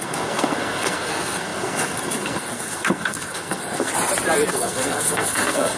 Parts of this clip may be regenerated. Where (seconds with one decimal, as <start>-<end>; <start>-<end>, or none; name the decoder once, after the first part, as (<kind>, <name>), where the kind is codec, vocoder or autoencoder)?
0.0-3.9 (codec, SNAC); 4.5-5.8

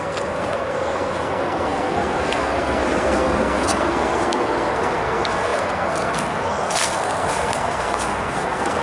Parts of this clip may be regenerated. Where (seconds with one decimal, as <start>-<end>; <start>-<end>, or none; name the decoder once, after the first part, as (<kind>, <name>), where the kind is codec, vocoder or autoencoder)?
0.0-8.8 (codec, SNAC)

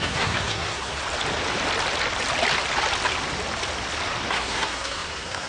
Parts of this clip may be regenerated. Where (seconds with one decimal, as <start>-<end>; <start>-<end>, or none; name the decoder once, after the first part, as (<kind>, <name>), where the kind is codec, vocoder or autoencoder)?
0.0-1.0 (codec, SNAC); 4.3-5.5